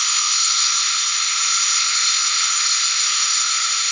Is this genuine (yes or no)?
no